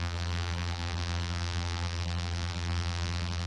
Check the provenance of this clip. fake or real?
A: fake